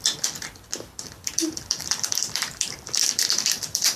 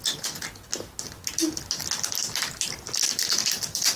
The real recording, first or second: second